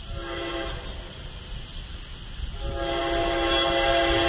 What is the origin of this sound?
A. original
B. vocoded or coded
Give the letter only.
A